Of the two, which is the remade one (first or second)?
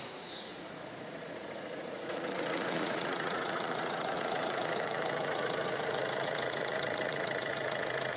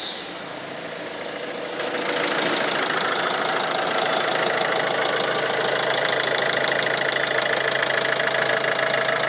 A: first